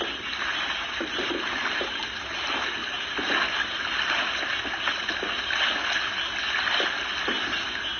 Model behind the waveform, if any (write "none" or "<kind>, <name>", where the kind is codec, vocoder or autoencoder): none